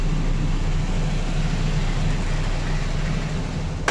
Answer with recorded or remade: recorded